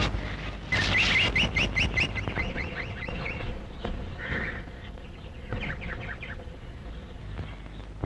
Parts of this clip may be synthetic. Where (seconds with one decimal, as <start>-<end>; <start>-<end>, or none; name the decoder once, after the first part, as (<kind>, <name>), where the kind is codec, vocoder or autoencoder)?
2.4-7.2 (vocoder, Vocos)